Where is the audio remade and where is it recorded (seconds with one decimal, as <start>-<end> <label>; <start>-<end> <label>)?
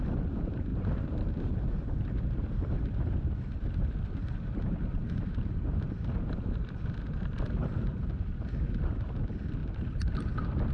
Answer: 0.0-0.7 recorded; 0.7-5.9 remade; 5.9-7.6 recorded; 7.6-8.1 remade; 8.1-9.6 recorded; 9.6-10.1 remade; 10.1-10.7 recorded